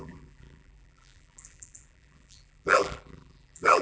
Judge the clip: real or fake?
fake